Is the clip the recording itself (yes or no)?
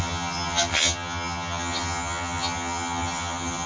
no